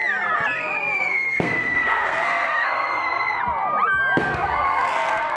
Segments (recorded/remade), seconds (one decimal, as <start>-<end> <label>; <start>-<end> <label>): 0.0-1.0 recorded; 1.0-3.4 remade; 3.4-4.2 recorded; 4.2-5.4 remade